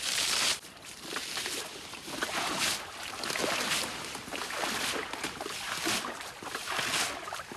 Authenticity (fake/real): real